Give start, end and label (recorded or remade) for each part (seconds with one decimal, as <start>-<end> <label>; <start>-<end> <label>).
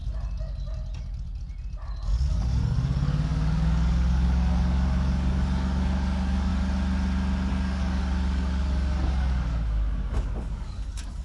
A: 0.0-2.0 recorded; 2.0-6.5 remade; 6.5-7.5 recorded; 7.5-11.2 remade